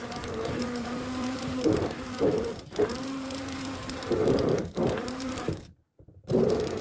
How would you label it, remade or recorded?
remade